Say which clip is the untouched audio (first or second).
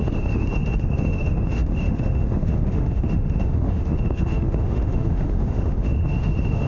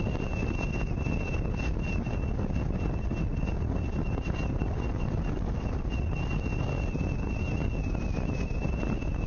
second